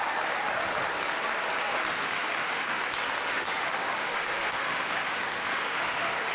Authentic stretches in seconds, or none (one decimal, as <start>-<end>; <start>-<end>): 0.0-1.9; 2.8-3.3